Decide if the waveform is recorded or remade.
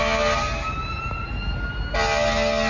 recorded